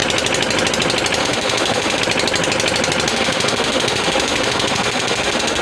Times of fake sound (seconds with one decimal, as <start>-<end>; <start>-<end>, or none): 1.2-2.0; 3.1-5.6